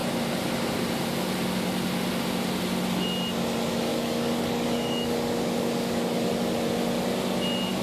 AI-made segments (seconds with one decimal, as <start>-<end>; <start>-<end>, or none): 3.9-6.3

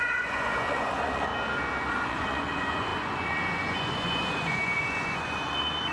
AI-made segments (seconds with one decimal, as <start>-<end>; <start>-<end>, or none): 0.0-1.3; 1.9-5.9

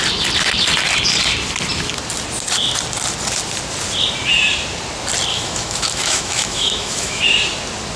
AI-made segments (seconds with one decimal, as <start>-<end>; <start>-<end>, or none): 5.3-7.2

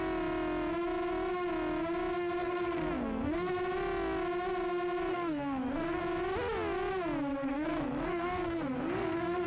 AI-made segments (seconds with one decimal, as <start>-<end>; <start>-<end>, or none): 2.4-3.5; 5.1-6.0; 7.3-9.5

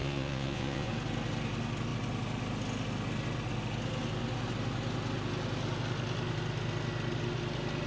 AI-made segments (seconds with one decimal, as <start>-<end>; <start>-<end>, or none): 0.0-0.9